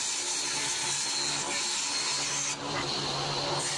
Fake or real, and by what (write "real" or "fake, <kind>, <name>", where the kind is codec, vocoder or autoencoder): real